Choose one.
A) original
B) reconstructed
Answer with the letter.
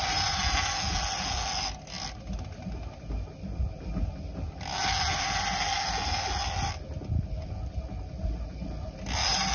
A